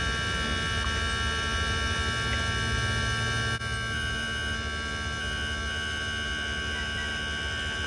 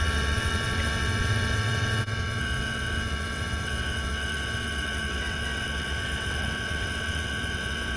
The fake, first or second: second